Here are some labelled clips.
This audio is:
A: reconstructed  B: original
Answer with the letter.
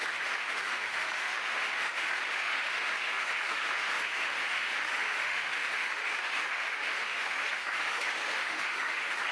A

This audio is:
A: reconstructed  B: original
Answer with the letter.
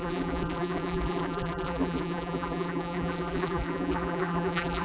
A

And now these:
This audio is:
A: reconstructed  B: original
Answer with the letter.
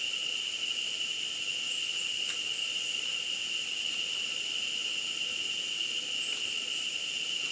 B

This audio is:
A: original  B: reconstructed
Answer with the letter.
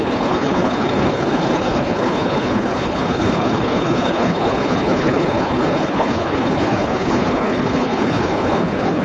B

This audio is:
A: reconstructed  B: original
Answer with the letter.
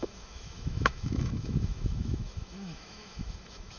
A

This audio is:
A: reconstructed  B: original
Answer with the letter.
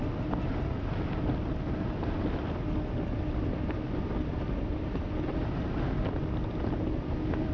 B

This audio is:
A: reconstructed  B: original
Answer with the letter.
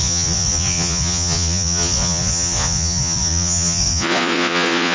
A